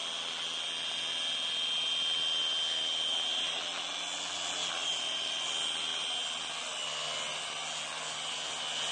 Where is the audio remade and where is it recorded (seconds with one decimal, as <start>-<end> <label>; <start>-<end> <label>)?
0.0-8.9 recorded